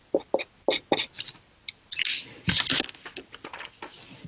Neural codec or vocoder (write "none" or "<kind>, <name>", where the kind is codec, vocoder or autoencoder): none